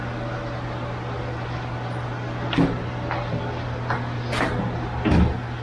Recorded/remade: recorded